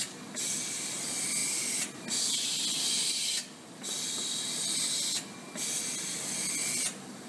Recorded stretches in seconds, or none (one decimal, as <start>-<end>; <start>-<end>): 0.0-7.3

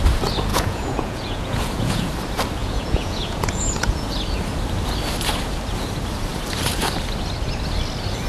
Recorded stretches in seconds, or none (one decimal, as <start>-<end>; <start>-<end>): 0.0-0.5; 2.1-2.6; 4.2-8.3

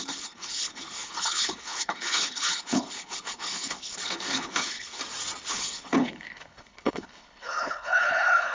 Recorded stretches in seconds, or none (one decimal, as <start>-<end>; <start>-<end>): 5.0-5.5

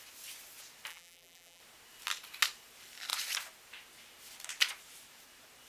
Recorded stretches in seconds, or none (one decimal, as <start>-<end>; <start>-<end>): 0.0-0.9; 1.6-5.7

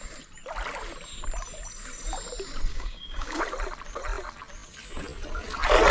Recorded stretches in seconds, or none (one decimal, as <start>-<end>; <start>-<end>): 0.0-2.7; 3.4-5.9

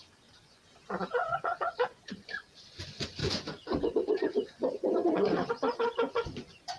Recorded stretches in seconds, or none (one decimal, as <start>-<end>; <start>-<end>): none

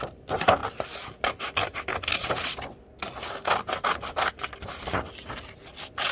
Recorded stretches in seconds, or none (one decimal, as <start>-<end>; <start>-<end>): 0.0-6.1